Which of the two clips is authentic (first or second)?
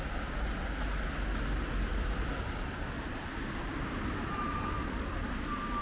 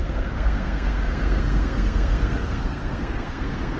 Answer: first